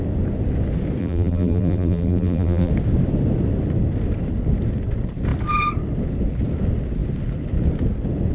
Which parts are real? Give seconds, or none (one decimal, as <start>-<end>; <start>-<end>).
0.0-1.0; 2.7-8.3